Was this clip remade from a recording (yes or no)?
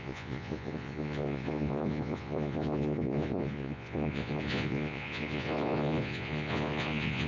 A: yes